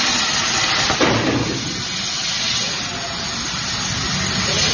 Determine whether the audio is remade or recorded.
recorded